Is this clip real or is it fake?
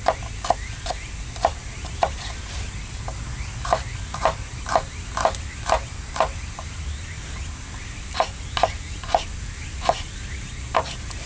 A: real